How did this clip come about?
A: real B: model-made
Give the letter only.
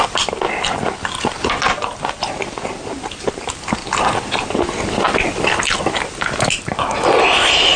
A